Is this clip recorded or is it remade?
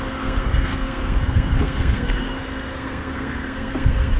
remade